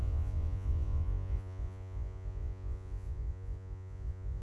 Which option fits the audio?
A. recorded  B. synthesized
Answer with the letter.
B